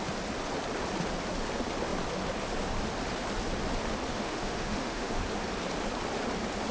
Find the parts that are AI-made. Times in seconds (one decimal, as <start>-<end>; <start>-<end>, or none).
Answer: 4.1-5.2